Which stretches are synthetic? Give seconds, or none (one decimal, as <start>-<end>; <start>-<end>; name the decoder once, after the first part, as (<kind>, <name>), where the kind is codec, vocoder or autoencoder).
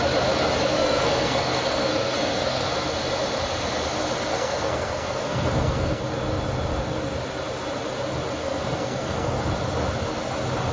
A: 0.7-2.7 (codec, SNAC); 4.3-6.0; 8.4-9.5